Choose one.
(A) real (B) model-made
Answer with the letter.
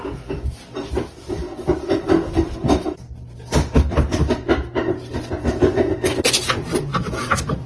A